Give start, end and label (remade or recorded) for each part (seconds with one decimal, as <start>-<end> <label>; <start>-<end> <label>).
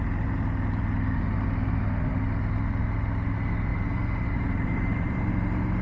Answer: 0.0-3.7 recorded; 3.7-5.3 remade; 5.3-5.8 recorded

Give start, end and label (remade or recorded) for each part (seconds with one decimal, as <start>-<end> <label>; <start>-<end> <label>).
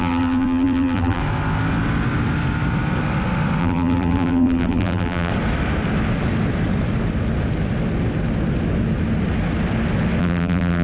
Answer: 0.0-1.2 remade; 1.2-3.6 recorded; 3.6-5.3 remade; 5.3-10.2 recorded; 10.2-10.8 remade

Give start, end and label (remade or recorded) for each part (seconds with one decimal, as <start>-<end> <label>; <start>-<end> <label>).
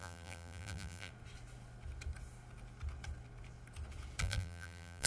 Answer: 0.0-1.1 remade; 1.1-4.2 recorded; 4.2-5.1 remade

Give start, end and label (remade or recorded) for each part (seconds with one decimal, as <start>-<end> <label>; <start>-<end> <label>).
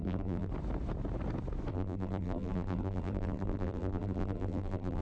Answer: 0.0-0.5 remade; 0.5-1.7 recorded; 1.7-5.0 remade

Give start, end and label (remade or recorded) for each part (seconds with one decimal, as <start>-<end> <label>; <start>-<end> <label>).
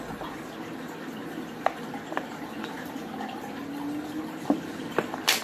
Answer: 0.0-5.4 remade